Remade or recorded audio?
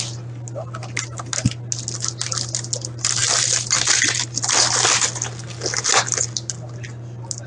recorded